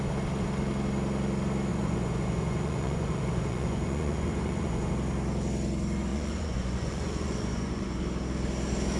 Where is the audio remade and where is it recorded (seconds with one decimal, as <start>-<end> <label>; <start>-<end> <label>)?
0.0-1.7 recorded; 1.7-4.9 remade; 4.9-6.1 recorded; 6.1-8.0 remade; 8.0-9.0 recorded